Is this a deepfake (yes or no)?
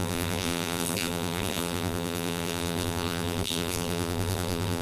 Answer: yes